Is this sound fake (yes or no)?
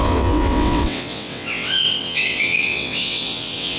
yes